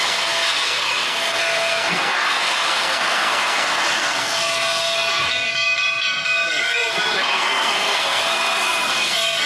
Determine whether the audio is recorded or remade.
remade